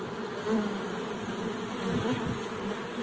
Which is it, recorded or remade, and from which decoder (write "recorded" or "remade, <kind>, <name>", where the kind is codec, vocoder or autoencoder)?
recorded